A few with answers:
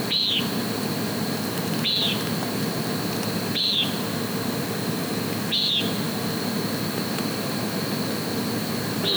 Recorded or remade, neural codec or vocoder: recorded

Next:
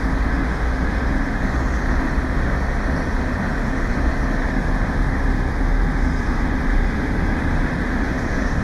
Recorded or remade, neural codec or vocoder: remade, autoencoder, DAC-VAE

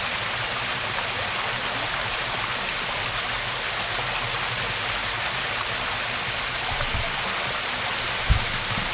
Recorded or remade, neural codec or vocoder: recorded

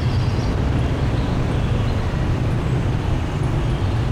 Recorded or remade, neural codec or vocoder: recorded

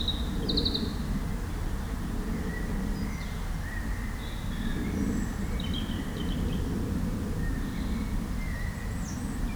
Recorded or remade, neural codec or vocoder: recorded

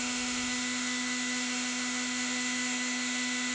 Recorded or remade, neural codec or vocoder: remade, autoencoder, DAC-VAE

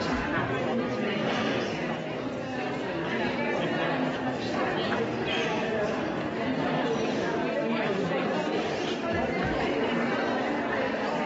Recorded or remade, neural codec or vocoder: recorded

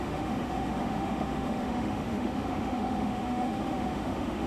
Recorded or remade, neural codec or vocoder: remade, autoencoder, DAC-VAE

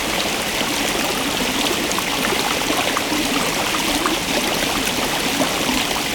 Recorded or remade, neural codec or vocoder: recorded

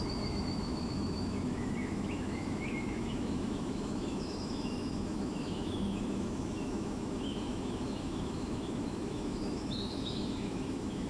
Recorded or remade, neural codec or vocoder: remade, autoencoder, DAC-VAE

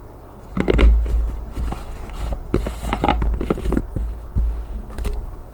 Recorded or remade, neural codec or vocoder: recorded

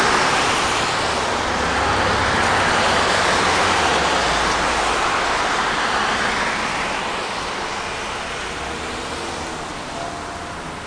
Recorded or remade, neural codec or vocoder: recorded